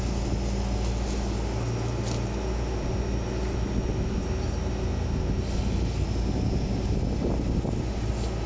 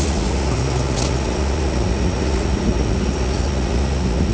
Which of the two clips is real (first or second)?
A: first